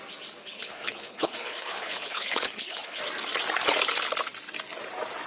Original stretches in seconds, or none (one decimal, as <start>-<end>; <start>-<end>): 0.0-0.4; 3.0-5.3